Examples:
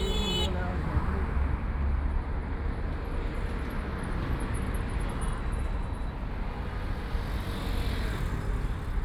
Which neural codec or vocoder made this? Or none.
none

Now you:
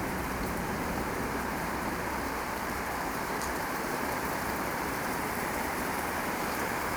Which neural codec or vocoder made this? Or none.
vocoder, BigVGAN v2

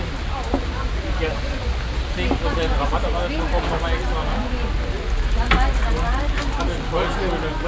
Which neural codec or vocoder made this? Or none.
none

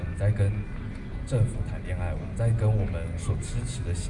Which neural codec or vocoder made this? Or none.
none